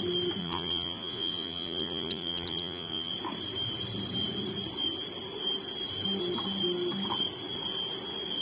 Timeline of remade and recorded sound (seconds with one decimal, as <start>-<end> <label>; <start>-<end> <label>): 0.0-0.4 recorded; 0.4-3.1 remade; 3.1-8.4 recorded